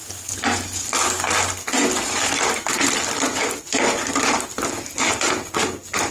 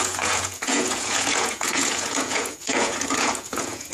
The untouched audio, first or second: first